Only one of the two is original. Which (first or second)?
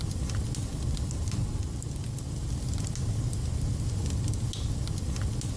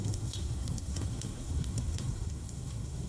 first